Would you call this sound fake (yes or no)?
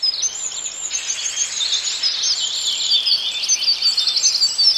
no